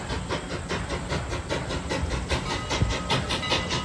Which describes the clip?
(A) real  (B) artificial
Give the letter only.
A